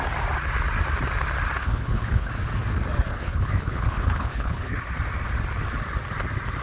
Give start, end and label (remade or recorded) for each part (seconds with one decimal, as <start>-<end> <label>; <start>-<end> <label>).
0.0-1.6 recorded; 1.6-2.3 remade; 2.3-3.1 recorded; 3.1-4.8 remade; 4.8-6.6 recorded